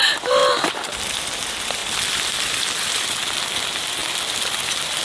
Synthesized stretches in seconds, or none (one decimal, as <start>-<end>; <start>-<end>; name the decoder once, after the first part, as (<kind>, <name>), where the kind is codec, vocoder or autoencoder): 1.8-3.1 (vocoder, BigVGAN v2); 4.0-5.0